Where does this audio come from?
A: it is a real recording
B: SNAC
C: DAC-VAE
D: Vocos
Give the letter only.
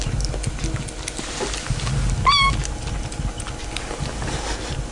A